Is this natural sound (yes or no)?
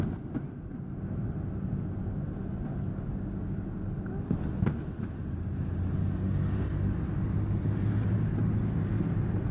yes